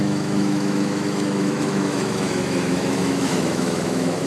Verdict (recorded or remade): remade